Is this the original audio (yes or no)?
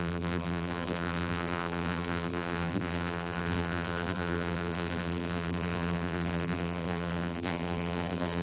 no